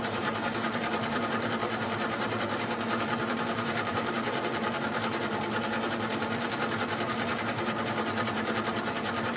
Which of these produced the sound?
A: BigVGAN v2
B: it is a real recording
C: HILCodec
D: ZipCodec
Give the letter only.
A